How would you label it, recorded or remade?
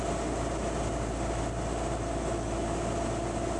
recorded